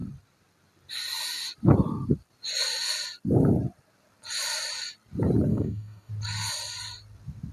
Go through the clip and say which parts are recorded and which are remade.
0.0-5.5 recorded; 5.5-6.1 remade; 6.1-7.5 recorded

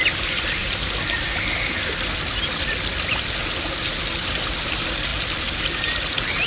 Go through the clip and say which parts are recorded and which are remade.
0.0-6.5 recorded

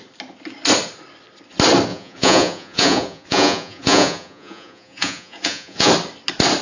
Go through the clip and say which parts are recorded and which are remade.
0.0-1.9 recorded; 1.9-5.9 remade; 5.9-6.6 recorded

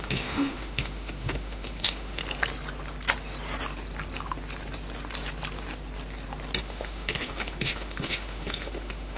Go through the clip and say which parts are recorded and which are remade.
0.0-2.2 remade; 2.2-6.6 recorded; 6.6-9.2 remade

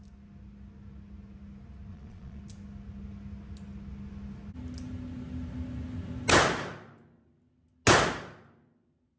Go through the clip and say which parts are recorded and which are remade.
0.0-1.9 recorded; 1.9-2.4 remade; 2.4-9.2 recorded

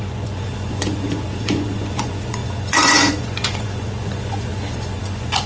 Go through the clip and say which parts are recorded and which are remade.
0.0-5.5 remade